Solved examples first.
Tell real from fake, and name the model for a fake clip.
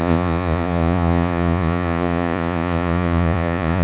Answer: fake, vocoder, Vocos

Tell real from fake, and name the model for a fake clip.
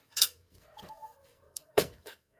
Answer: fake, codec, SNAC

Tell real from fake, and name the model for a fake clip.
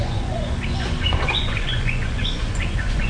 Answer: fake, vocoder, Vocos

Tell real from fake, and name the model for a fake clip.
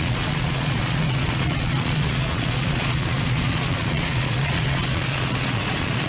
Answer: fake, vocoder, Vocos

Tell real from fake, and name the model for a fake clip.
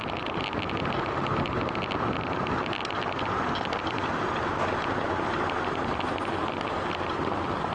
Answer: real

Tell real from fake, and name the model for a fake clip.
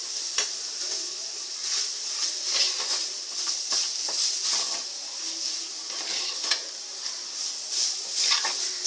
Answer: real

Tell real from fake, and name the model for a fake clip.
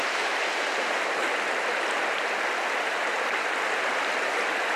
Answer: real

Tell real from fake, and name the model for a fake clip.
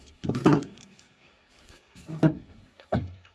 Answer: fake, codec, SNAC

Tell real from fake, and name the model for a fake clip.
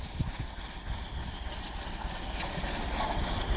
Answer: real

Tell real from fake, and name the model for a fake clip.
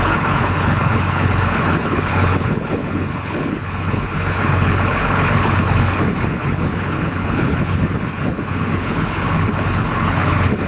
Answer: fake, codec, HILCodec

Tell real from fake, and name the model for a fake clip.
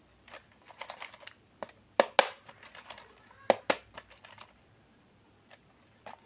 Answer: real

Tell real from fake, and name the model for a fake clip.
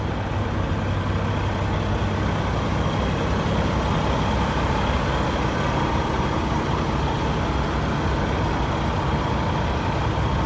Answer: real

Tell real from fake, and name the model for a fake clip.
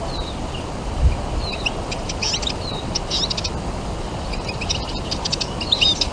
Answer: real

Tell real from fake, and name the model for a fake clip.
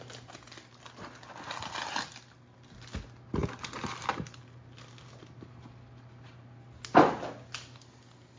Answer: real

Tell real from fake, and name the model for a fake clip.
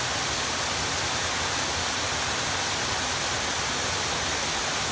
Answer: real